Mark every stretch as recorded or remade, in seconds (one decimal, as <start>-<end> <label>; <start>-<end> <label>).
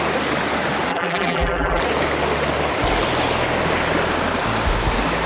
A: 0.0-0.9 recorded; 0.9-1.8 remade; 1.8-5.3 recorded